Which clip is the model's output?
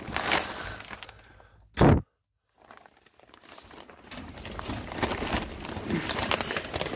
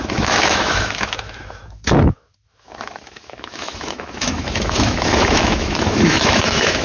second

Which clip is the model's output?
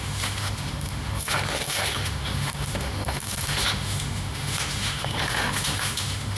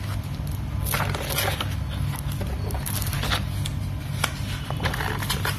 first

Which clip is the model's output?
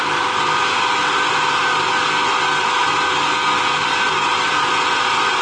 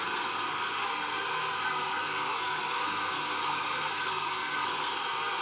second